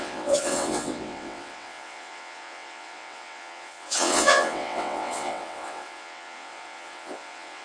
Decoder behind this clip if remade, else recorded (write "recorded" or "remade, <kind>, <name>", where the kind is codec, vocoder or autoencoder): remade, vocoder, WaveNeXt